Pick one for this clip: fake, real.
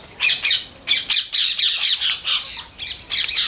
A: fake